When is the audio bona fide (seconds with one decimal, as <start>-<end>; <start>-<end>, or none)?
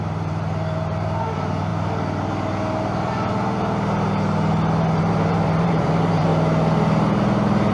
1.7-5.0; 6.3-7.7